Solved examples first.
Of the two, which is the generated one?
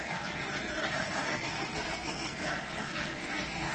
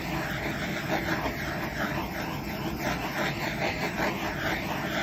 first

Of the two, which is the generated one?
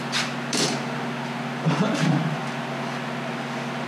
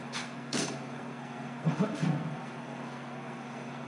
second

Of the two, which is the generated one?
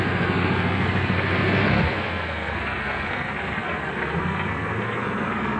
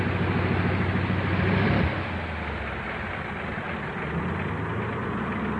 first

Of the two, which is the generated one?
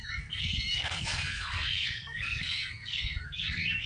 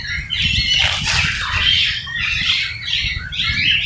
first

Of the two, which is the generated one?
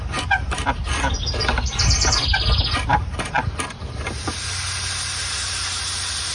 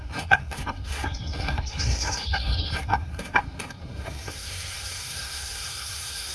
second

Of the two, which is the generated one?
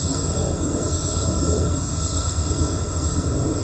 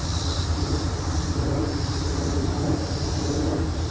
first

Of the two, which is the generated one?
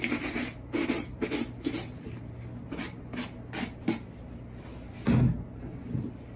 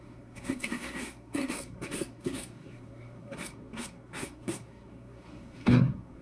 second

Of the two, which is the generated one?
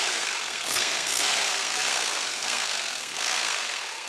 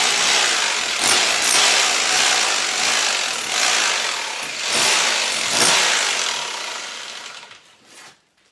first